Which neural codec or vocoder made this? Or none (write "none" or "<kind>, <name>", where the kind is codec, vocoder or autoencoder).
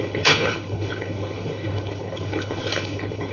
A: codec, HILCodec